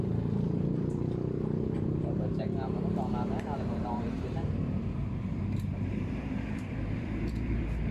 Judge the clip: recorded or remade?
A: remade